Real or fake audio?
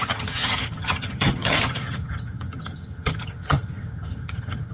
fake